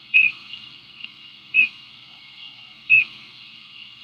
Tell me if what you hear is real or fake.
fake